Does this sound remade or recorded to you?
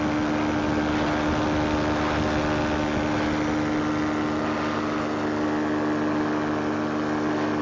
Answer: recorded